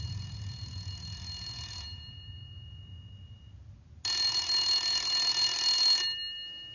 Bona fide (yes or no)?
yes